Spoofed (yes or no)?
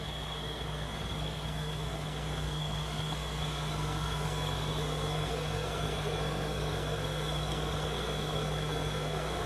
yes